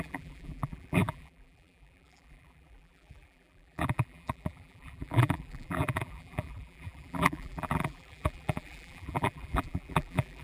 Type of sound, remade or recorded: remade